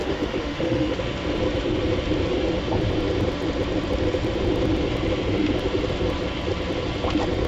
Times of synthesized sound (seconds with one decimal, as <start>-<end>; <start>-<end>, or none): 0.0-1.0